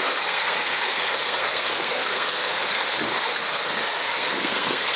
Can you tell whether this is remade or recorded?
remade